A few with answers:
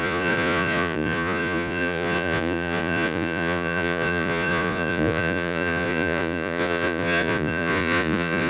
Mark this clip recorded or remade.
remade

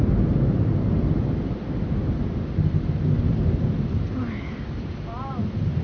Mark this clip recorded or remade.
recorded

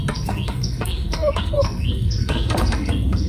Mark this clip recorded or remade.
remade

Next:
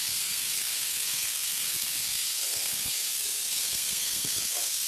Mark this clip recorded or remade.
remade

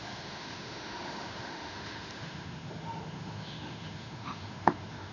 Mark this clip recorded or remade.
remade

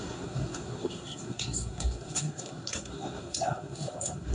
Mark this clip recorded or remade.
remade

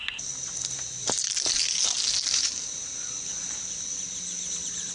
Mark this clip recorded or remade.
recorded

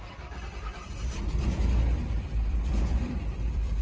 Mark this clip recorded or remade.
remade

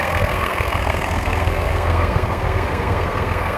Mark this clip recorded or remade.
remade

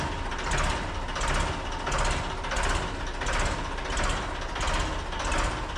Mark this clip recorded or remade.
recorded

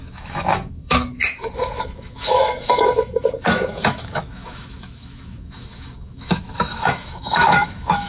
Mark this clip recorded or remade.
remade